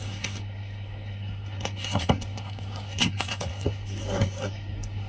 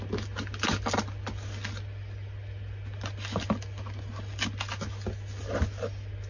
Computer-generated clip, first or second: first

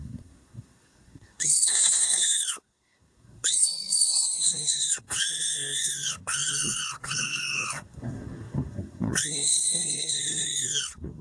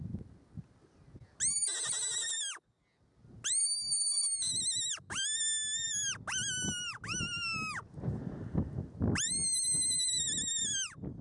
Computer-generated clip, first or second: first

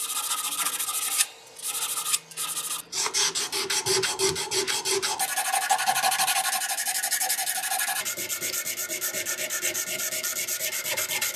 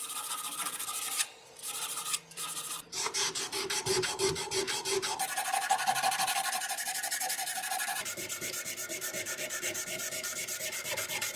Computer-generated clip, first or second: second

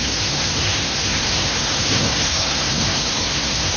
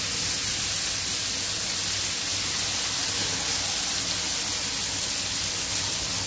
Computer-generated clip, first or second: first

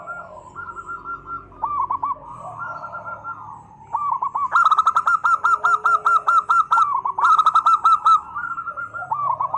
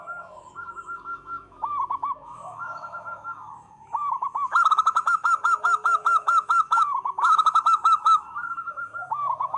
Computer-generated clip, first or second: second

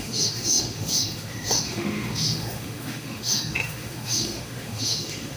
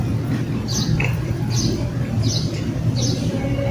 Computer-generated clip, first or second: first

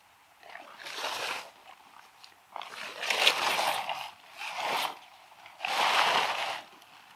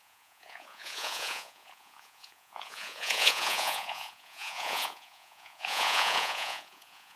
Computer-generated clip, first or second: second